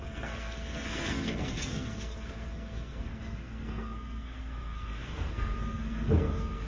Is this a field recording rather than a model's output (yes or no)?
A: no